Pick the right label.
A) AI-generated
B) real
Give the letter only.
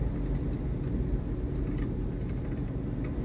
B